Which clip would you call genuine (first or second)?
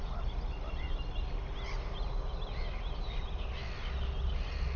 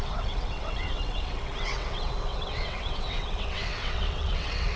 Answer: first